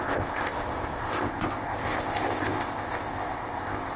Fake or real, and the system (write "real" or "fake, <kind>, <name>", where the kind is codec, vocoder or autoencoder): fake, codec, ZipCodec